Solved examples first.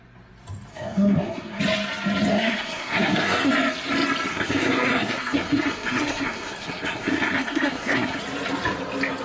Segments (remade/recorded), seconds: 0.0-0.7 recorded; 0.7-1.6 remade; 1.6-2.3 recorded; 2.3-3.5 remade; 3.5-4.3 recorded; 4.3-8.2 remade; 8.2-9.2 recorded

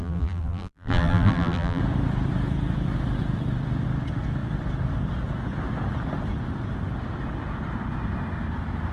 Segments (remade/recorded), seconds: 0.0-1.8 remade; 1.8-8.9 recorded